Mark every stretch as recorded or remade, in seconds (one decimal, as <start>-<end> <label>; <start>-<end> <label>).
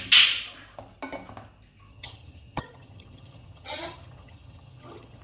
0.0-1.9 recorded; 1.9-5.2 remade